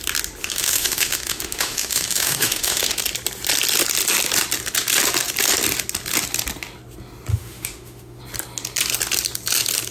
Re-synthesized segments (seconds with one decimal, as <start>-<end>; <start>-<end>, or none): 0.4-3.0; 7.3-8.2